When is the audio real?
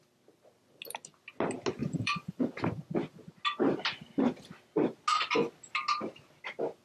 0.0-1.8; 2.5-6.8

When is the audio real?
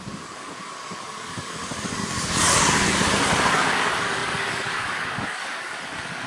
2.0-3.5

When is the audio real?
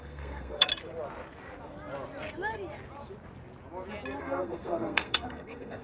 0.7-4.2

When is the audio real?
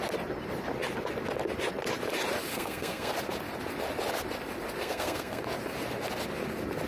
0.0-2.5; 3.1-4.8; 5.4-6.9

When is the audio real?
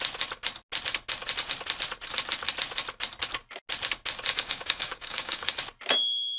0.0-4.3; 5.6-6.4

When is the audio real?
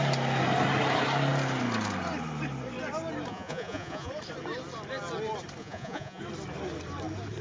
0.0-3.3; 4.1-5.6; 6.2-7.4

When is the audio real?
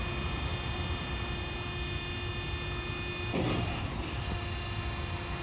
0.0-5.4